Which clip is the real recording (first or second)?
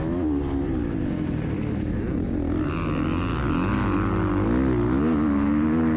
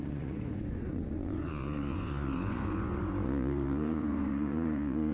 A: first